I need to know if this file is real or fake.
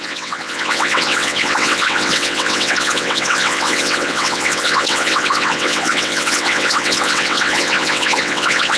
fake